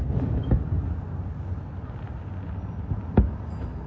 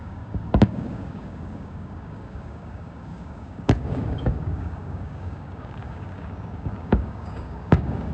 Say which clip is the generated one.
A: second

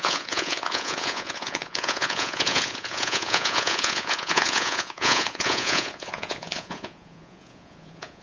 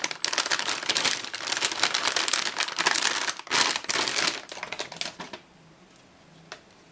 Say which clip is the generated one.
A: first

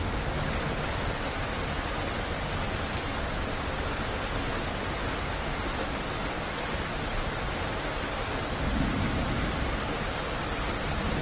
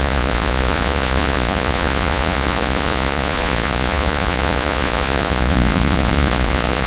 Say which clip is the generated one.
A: second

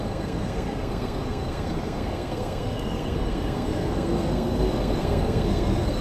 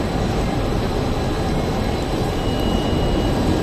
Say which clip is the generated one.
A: first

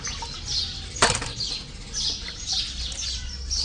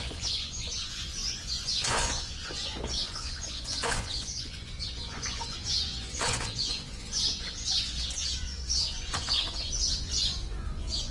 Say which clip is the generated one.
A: second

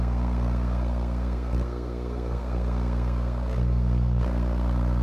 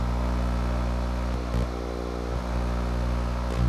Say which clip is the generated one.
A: first